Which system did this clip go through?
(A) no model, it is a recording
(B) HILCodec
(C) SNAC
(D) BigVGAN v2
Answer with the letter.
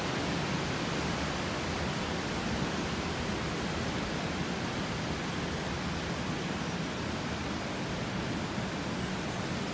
A